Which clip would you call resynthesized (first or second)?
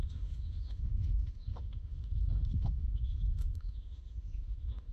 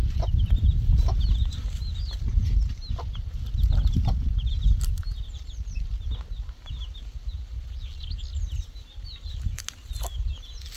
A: first